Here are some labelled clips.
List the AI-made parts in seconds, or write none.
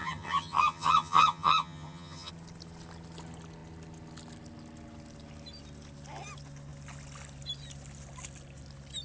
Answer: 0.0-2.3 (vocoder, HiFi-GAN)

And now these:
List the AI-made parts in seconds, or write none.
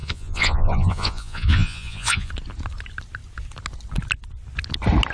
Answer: 0.0-2.3 (vocoder, Vocos)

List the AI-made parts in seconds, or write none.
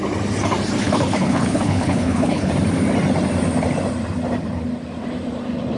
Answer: 0.8-2.5 (codec, HILCodec)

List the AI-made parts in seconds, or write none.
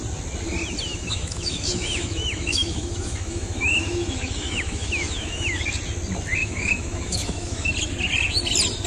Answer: 0.9-5.6 (autoencoder, DAC-VAE); 6.4-7.7